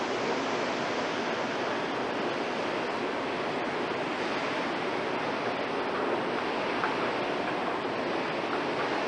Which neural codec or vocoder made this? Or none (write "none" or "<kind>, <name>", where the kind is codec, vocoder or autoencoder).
none